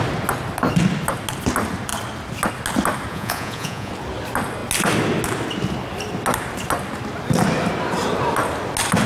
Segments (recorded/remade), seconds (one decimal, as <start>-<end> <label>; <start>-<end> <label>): 0.0-3.1 recorded; 3.1-3.9 remade; 3.9-9.1 recorded